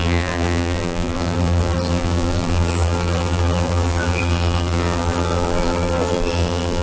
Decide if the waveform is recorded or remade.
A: remade